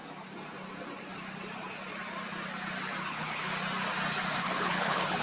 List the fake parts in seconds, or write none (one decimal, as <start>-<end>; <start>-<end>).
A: 3.1-3.5; 4.4-5.2